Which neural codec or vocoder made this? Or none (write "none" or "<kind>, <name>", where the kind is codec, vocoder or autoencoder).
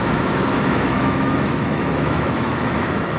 autoencoder, DAC-VAE